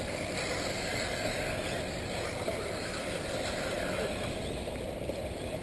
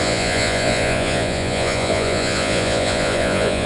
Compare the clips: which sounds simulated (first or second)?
second